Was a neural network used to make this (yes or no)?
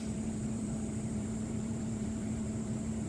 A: yes